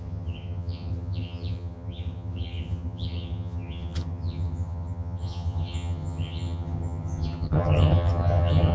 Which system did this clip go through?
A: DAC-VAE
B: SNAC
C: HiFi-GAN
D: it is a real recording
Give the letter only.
C